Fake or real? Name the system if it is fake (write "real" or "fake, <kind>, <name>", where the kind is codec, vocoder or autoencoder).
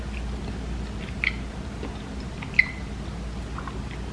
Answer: real